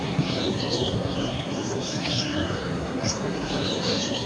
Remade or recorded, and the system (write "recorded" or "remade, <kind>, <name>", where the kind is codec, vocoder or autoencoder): remade, codec, SNAC